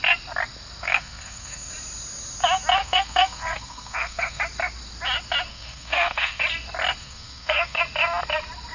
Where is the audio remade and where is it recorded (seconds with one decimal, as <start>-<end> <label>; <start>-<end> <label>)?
0.0-0.8 recorded; 0.8-1.7 remade; 1.7-2.8 recorded; 2.8-4.4 remade; 4.4-5.5 recorded; 5.5-6.4 remade; 6.4-7.0 recorded; 7.0-7.8 remade; 7.8-8.7 recorded